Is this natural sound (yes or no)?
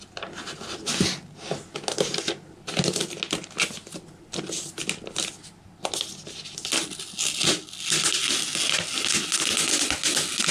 yes